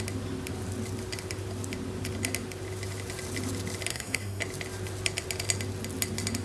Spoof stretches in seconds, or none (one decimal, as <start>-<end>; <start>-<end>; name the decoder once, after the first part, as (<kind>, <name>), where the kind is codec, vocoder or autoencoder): 3.9-4.4 (codec, SNAC)